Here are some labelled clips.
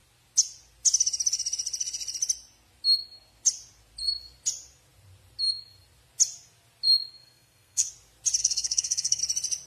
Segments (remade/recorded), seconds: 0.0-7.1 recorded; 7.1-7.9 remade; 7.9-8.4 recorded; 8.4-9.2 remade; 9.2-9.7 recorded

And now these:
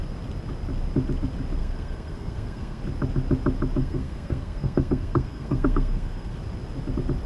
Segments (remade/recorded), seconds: 0.0-1.6 recorded; 1.6-2.8 remade; 2.8-3.8 recorded; 3.8-6.4 remade; 6.4-7.3 recorded

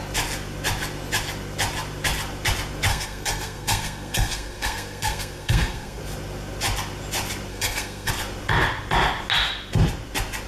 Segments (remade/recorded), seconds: 0.0-2.9 recorded; 2.9-6.0 remade; 6.0-7.5 recorded; 7.5-8.1 remade; 8.1-10.5 recorded